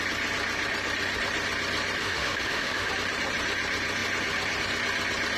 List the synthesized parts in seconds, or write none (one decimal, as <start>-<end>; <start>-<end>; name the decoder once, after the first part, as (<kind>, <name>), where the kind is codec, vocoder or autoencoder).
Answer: 2.0-2.9 (autoencoder, DAC-VAE)